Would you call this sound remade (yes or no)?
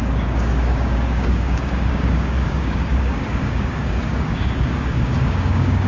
yes